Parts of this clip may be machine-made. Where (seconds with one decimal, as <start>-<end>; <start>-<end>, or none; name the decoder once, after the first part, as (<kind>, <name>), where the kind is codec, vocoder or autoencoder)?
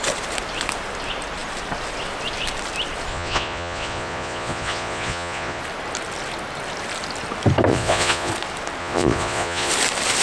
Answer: 3.1-5.6 (vocoder, Vocos); 7.7-8.3; 8.8-9.7